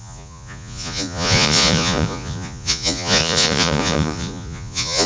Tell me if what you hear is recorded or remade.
remade